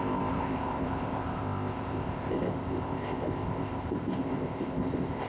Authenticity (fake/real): fake